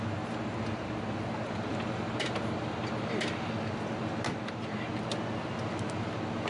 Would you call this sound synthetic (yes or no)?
no